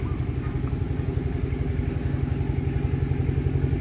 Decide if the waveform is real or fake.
real